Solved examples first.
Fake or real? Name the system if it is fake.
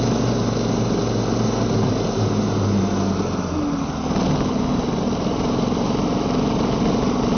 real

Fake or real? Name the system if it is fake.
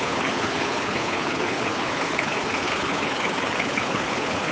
fake, codec, HILCodec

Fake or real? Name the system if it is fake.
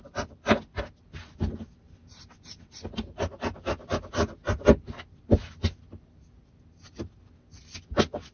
real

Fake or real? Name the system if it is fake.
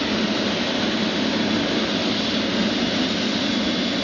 real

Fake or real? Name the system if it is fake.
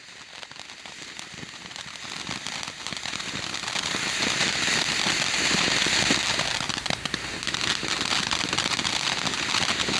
real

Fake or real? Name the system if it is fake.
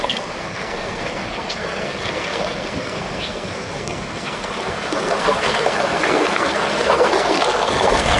fake, codec, SNAC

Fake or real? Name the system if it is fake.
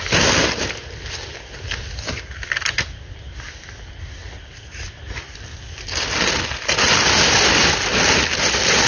real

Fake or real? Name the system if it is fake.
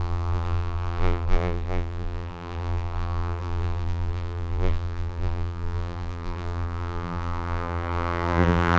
fake, vocoder, BigVGAN v2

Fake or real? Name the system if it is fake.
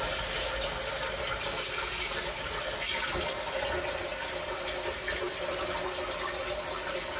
real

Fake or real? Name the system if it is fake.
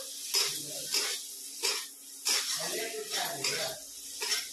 real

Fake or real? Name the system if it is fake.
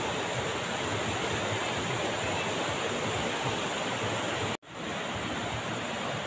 real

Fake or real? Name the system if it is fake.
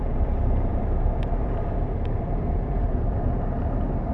fake, vocoder, BigVGAN v2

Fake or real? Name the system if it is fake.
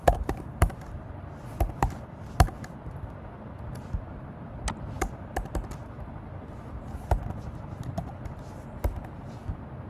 real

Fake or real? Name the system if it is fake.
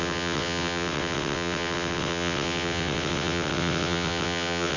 fake, vocoder, WaveNeXt